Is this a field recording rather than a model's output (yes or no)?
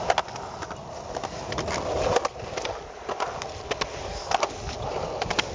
yes